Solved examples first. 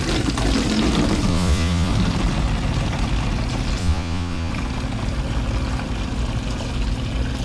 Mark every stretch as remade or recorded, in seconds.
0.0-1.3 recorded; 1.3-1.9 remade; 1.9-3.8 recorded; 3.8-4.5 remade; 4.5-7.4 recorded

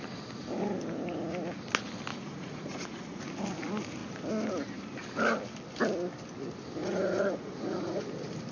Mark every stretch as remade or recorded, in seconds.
0.0-2.1 recorded; 2.1-3.2 remade; 3.2-6.8 recorded; 6.8-8.0 remade; 8.0-8.5 recorded